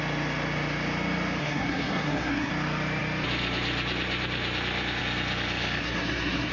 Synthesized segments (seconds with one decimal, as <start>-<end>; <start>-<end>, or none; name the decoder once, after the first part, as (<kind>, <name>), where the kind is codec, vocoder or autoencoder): 1.4-2.5 (codec, SNAC); 5.8-6.5